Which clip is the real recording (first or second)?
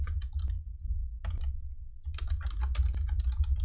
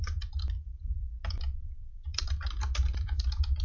first